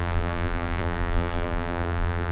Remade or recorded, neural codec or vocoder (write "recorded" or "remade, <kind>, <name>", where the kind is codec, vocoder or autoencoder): remade, vocoder, BigVGAN v2